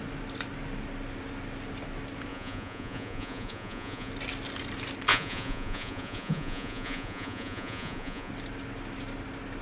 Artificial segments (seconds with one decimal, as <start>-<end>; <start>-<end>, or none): 2.3-4.1; 5.1-8.3